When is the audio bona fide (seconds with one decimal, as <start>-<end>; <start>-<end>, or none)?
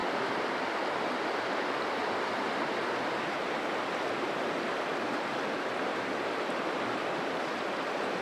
0.0-8.2